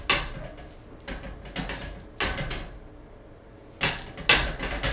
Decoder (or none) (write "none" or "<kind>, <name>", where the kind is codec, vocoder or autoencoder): none